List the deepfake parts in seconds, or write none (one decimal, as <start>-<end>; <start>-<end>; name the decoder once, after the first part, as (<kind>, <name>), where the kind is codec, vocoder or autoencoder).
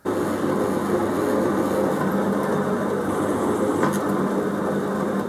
none